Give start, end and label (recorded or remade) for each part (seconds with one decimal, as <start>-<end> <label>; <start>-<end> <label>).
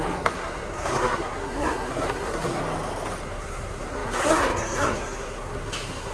0.0-2.6 remade; 2.6-3.2 recorded; 3.2-6.1 remade